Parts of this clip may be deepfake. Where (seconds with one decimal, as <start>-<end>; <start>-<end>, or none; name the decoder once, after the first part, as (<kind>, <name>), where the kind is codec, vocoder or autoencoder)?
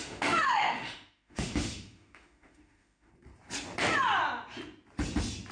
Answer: 0.0-3.1 (autoencoder, DAC-VAE)